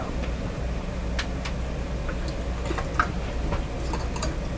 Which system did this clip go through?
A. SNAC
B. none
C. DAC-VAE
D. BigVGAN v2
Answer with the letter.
B